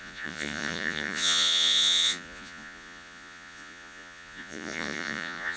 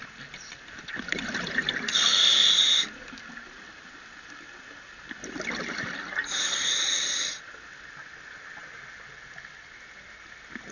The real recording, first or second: second